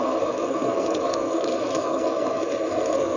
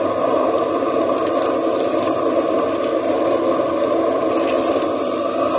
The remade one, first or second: first